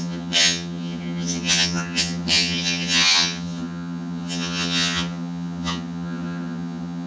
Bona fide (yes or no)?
no